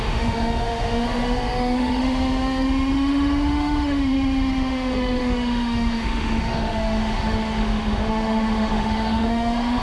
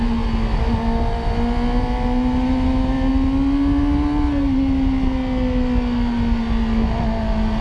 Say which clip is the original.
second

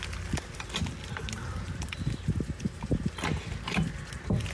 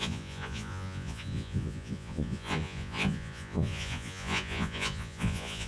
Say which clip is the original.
first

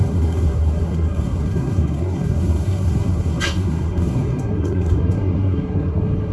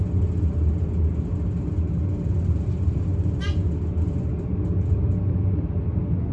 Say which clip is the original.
second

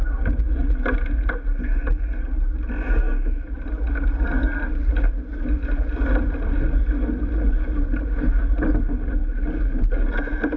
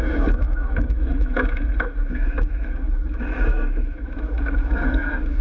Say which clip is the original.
first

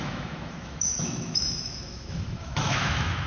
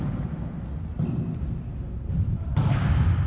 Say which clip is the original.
second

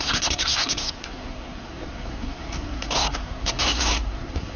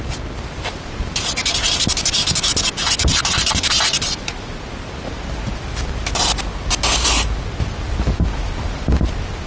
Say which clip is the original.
second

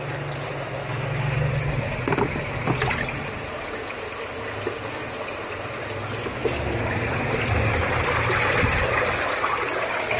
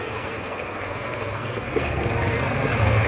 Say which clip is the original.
first